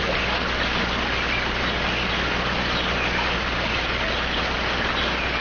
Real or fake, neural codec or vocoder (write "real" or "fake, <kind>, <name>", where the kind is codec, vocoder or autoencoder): real